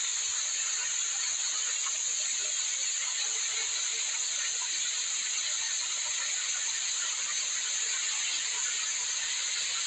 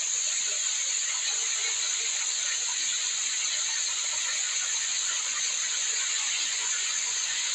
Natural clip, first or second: first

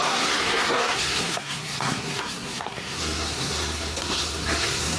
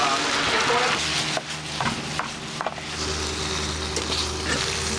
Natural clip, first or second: second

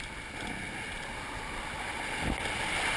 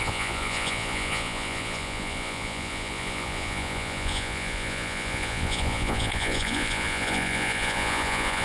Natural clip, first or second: first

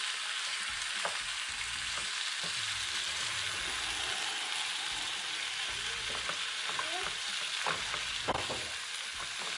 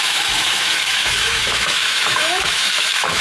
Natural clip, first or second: first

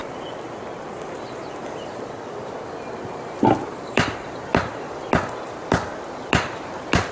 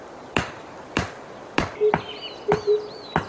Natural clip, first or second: first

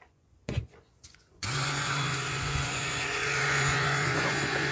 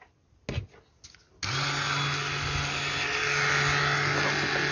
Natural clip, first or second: second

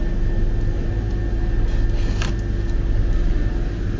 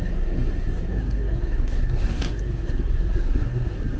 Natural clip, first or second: first